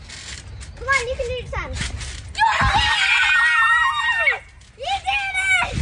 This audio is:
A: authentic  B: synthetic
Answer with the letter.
A